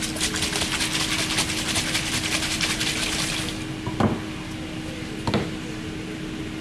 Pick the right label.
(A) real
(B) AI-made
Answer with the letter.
A